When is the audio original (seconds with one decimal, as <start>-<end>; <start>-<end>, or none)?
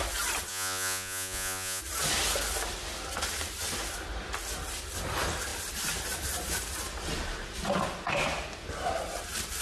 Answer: 0.0-0.5; 1.8-9.6